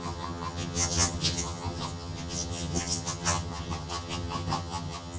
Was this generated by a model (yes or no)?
yes